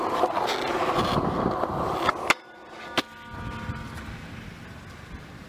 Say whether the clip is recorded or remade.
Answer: recorded